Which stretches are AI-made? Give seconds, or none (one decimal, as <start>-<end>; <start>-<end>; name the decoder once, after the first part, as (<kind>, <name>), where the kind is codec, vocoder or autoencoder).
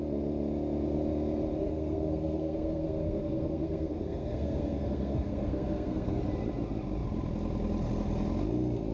1.6-6.2 (codec, SNAC)